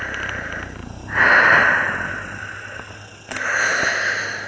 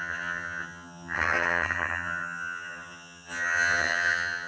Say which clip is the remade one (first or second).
second